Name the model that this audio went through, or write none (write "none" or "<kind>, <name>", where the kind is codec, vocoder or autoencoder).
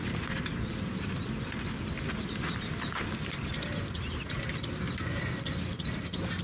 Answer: none